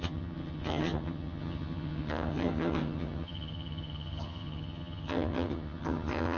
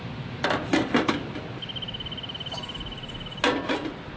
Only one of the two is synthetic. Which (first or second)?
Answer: first